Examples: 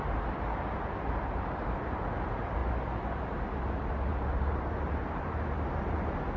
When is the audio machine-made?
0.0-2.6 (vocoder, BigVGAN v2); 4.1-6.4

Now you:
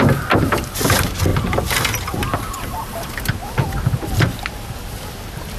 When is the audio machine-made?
none

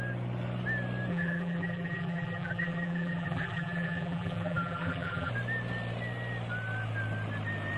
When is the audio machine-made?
1.1-5.3 (vocoder, BigVGAN v2)

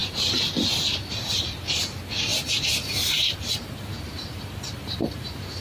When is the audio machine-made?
0.0-1.8 (vocoder, BigVGAN v2); 2.3-5.6

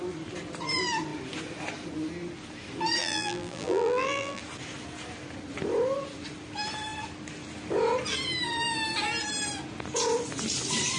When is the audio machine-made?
3.0-4.4 (vocoder, BigVGAN v2)

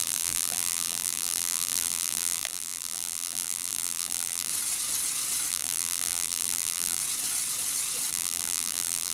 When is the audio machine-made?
0.0-4.5 (vocoder, BigVGAN v2); 5.5-7.0; 8.1-9.1

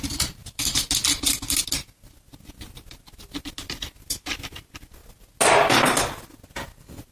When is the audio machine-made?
none